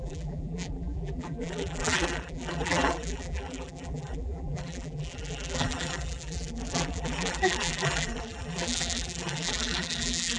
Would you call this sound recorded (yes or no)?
no